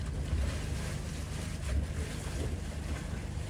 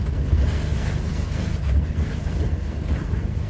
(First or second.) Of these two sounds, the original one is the first